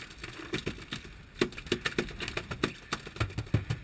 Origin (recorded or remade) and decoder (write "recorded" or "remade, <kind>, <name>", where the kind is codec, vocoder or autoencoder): recorded